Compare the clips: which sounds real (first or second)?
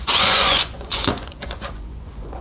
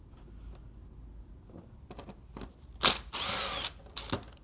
second